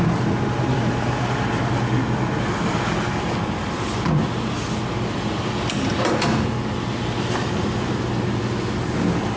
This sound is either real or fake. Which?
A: real